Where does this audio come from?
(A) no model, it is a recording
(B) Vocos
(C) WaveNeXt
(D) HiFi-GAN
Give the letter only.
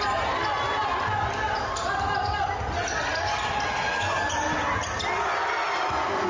A